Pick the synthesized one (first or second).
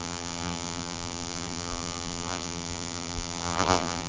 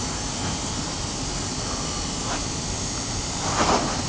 first